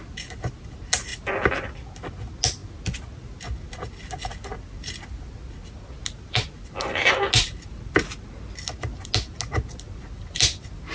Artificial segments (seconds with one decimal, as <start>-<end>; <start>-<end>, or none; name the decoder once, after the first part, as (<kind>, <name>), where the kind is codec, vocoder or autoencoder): none

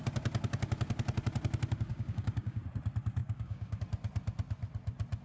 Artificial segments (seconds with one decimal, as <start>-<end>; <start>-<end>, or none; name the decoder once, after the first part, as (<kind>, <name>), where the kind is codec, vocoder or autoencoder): 1.9-2.6 (codec, DAC); 3.2-3.8

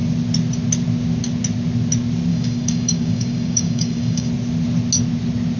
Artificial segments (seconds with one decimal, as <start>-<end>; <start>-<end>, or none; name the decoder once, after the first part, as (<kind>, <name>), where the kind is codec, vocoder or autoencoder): 2.3-4.3 (codec, DAC)

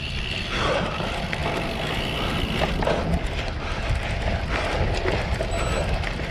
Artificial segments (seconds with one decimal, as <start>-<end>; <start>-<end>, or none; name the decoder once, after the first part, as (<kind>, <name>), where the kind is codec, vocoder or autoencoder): none

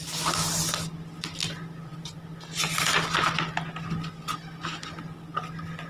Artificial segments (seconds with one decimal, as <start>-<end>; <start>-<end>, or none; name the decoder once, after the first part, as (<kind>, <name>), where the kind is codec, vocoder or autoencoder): none

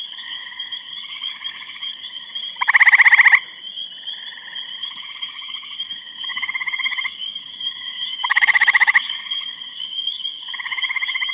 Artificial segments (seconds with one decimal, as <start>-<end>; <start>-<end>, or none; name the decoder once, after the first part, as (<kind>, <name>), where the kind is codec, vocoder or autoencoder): 0.0-2.3 (codec, DAC); 4.8-11.3

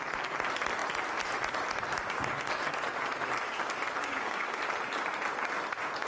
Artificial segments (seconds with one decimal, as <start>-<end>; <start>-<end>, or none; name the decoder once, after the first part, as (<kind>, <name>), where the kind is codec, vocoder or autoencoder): 4.0-4.6 (codec, DAC)

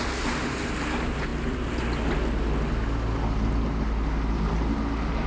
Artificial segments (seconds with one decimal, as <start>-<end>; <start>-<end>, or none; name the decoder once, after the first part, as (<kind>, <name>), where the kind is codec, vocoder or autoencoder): none